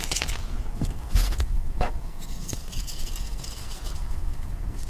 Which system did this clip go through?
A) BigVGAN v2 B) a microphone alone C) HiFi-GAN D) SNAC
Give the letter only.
D